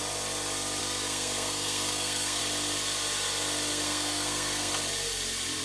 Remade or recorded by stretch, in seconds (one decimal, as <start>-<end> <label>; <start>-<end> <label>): 0.0-0.8 recorded; 0.8-2.4 remade; 2.4-3.7 recorded; 3.7-4.7 remade; 4.7-5.6 recorded